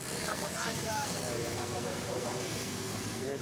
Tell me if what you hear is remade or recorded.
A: remade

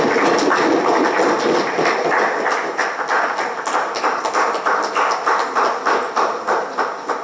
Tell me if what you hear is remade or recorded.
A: recorded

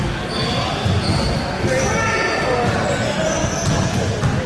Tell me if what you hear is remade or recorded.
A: recorded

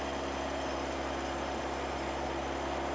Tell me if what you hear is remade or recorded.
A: recorded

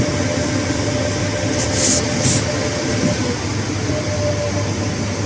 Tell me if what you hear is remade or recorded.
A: recorded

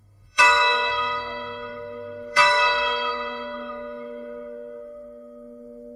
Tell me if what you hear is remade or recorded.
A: remade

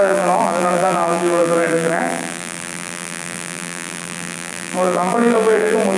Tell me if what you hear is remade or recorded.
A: remade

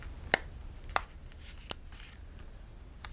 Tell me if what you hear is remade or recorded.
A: recorded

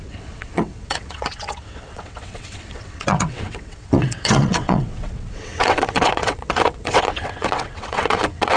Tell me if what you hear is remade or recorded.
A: remade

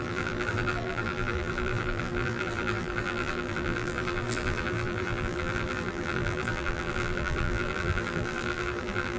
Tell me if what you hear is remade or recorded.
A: remade